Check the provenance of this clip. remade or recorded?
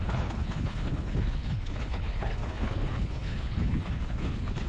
remade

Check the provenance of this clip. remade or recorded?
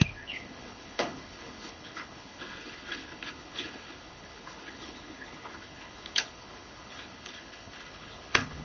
remade